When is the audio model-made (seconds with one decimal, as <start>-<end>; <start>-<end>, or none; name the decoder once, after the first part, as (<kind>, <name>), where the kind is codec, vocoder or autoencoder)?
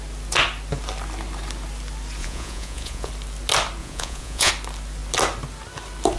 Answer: 2.2-3.1 (vocoder, Vocos); 3.8-4.5